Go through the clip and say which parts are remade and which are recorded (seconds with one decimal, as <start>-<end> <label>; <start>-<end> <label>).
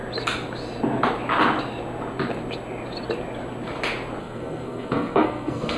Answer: 0.0-4.2 recorded; 4.2-5.8 remade